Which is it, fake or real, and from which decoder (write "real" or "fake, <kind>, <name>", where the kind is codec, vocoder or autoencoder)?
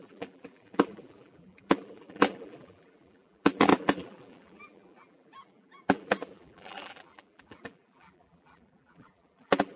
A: fake, vocoder, BigVGAN v2